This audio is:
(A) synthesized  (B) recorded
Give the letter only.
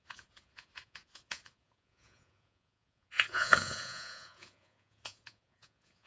A